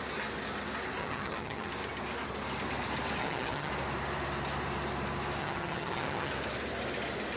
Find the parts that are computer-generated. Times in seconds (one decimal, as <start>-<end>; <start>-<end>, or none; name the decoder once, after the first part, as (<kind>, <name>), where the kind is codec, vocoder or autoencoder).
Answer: 1.0-1.7 (vocoder, HiFi-GAN); 3.2-3.7; 5.4-6.3